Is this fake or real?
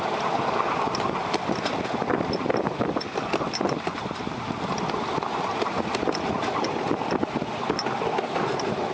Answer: real